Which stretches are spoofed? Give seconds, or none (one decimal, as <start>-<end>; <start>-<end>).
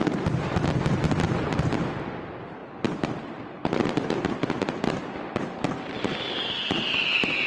2.6-7.1